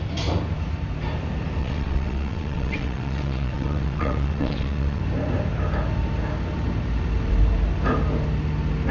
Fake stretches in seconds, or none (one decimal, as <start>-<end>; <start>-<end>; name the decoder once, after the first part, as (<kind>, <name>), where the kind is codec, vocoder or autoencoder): 1.6-5.0 (vocoder, WaveNeXt)